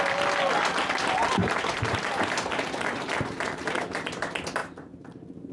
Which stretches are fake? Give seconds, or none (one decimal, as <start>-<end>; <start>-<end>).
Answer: 1.4-4.1; 4.6-5.5